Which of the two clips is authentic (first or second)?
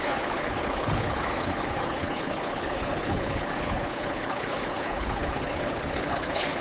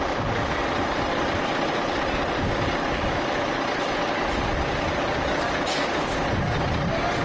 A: second